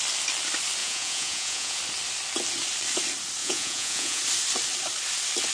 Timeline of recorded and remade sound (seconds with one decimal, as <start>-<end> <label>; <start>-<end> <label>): 0.0-0.8 recorded; 0.8-1.8 remade; 1.8-3.4 recorded; 3.4-4.2 remade; 4.2-5.5 recorded